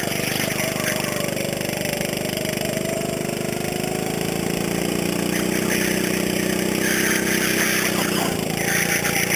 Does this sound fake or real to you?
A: real